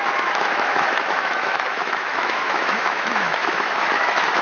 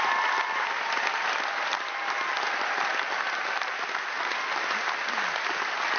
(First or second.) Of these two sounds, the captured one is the second